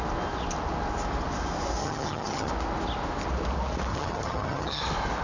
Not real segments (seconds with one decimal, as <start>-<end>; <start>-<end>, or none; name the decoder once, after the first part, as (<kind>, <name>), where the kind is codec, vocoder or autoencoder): 1.8-2.5 (vocoder, HiFi-GAN); 3.9-4.8